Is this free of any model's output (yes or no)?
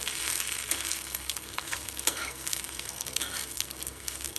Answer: no